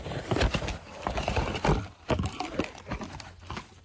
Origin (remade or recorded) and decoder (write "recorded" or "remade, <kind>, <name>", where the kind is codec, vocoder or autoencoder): recorded